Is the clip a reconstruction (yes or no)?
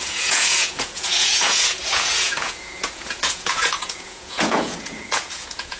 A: yes